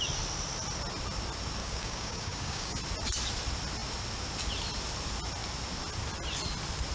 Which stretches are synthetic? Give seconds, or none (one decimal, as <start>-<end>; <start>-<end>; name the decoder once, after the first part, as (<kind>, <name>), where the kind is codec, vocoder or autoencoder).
1.6-2.8 (codec, DAC)